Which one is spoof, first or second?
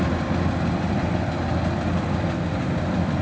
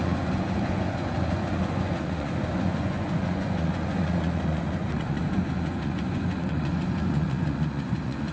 second